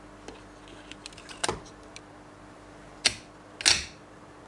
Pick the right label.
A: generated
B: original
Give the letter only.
B